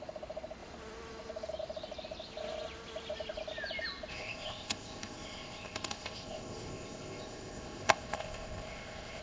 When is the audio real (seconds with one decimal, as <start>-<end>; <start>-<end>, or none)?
0.0-4.1